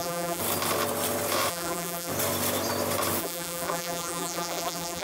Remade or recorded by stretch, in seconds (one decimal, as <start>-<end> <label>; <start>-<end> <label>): 0.0-0.4 remade; 0.4-1.5 recorded; 1.5-2.1 remade; 2.1-3.2 recorded; 3.2-5.0 remade